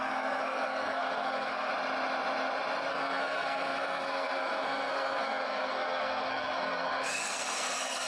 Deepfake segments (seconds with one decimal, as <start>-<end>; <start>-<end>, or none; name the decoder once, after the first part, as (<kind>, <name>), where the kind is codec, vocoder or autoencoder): 0.0-1.7 (codec, SNAC); 2.9-8.1